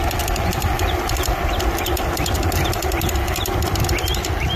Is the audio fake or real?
real